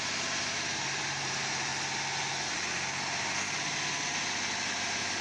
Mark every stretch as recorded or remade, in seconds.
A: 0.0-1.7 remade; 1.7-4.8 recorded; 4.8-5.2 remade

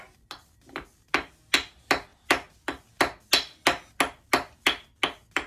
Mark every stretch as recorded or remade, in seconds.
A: 0.0-5.5 recorded

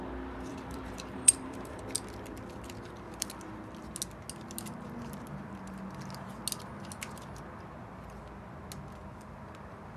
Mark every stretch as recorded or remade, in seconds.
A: 0.0-0.5 recorded; 0.5-1.8 remade; 1.8-9.0 recorded; 9.0-10.0 remade